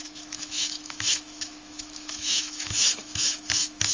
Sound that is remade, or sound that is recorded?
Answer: remade